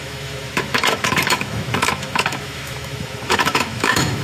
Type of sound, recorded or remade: remade